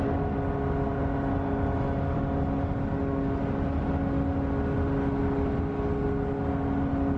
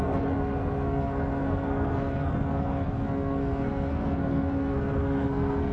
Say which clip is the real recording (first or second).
first